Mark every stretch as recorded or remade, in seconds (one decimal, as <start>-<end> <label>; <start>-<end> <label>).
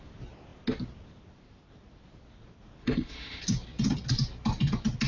0.0-2.8 recorded; 2.8-3.4 remade; 3.4-5.1 recorded